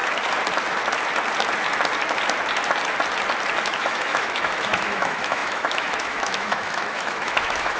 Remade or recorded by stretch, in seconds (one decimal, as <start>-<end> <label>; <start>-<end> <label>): 0.0-3.6 recorded; 3.6-7.8 remade